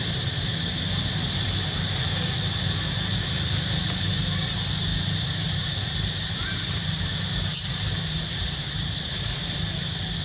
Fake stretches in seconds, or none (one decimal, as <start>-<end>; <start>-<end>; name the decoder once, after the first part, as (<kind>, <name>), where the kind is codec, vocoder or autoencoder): 4.9-9.7 (vocoder, BigVGAN v2)